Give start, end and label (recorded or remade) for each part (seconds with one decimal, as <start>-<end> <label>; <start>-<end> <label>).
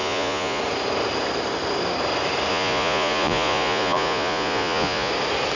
0.0-0.6 remade; 0.6-2.5 recorded; 2.5-5.1 remade; 5.1-5.6 recorded